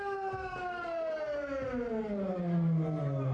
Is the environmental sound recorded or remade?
recorded